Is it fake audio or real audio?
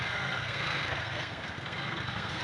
fake